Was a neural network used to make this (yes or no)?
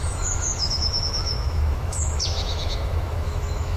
yes